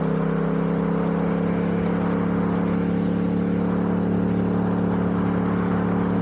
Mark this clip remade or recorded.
recorded